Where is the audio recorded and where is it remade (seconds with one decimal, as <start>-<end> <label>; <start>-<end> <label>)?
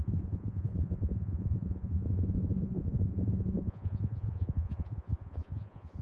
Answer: 0.0-6.0 remade